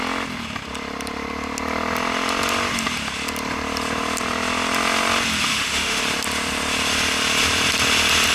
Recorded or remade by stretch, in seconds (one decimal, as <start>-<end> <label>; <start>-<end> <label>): 0.0-5.5 recorded; 5.5-6.0 remade; 6.0-8.3 recorded